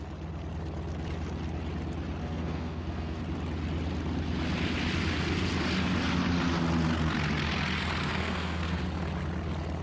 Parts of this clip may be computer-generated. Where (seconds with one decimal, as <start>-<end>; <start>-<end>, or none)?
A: 2.2-3.2; 8.0-8.8